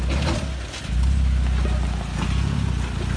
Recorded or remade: recorded